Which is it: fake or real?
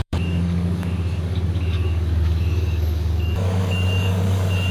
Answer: fake